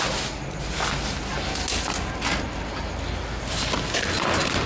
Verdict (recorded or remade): recorded